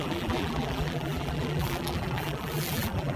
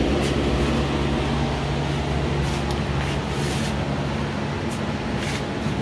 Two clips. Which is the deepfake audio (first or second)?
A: first